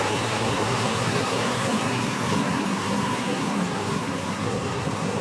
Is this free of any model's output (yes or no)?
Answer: no